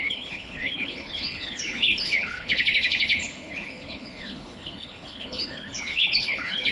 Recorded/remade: remade